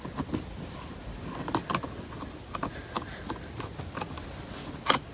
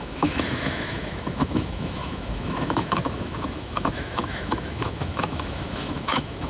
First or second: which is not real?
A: second